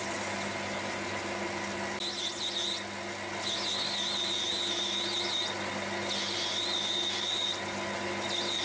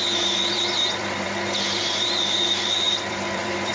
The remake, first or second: second